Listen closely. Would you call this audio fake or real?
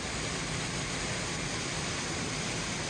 real